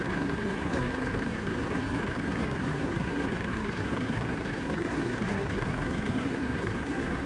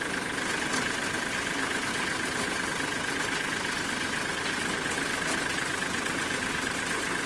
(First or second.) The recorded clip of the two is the second